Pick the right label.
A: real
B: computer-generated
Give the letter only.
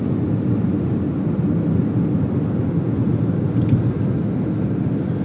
A